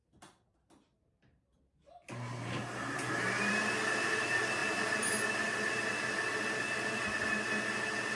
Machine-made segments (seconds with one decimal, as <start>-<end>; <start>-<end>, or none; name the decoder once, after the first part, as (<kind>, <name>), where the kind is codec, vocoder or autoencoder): none